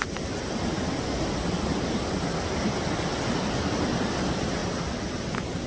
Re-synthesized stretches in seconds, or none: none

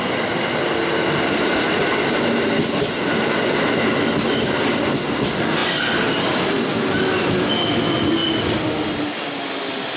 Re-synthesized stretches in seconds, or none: none

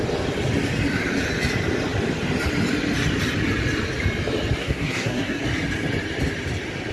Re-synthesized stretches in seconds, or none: 4.6-5.4 (codec, SNAC)

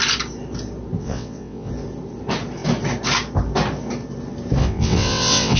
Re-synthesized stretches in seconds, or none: 1.0-1.7 (vocoder, WaveNeXt); 4.6-5.6

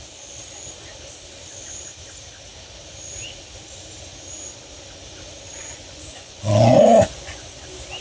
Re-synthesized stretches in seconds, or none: 5.5-7.5 (vocoder, Vocos)

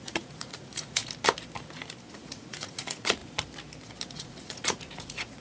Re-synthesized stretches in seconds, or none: 0.0-1.0 (vocoder, Vocos); 2.1-3.2; 4.1-5.4

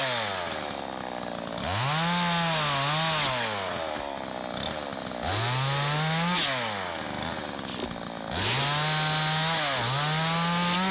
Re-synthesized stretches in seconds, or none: none

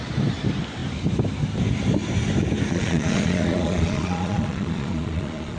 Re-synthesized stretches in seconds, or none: 2.7-5.6 (vocoder, Vocos)